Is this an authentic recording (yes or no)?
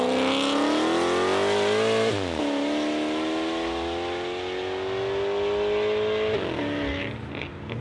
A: yes